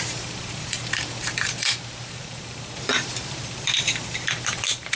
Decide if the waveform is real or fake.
fake